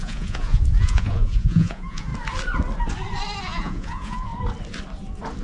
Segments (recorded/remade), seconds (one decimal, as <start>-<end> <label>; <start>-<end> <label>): 0.0-2.1 remade; 2.1-3.4 recorded; 3.4-4.3 remade; 4.3-5.4 recorded